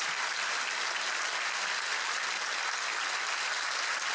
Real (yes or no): yes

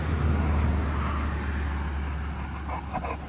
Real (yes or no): yes